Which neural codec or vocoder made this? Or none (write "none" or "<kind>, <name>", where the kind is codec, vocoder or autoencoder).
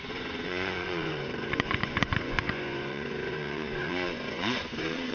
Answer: vocoder, Vocos